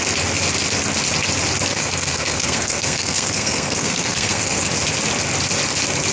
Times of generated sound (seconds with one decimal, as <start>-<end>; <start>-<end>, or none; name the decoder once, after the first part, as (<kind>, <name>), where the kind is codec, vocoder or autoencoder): 1.7-4.7 (codec, SNAC)